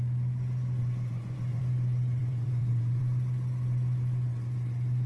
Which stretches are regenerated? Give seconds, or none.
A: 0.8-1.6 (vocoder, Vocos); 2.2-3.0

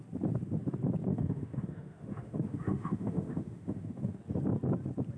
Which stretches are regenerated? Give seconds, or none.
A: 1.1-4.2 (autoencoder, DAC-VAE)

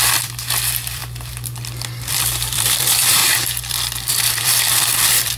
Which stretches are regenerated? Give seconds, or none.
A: 0.0-1.0 (vocoder, BigVGAN v2); 2.1-3.2; 4.1-5.4

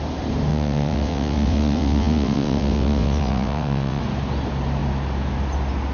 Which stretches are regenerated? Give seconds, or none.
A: 0.5-4.0 (vocoder, WaveNeXt)

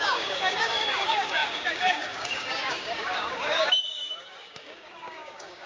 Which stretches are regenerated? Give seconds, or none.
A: 0.0-5.7 (codec, DAC)

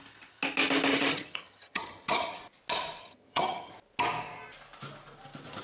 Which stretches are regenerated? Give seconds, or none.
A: 0.9-2.4 (vocoder, HiFi-GAN); 3.0-3.7

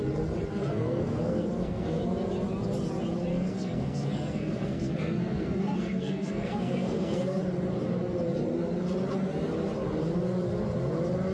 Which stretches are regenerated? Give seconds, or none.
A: 0.7-2.0 (codec, SNAC); 3.3-7.4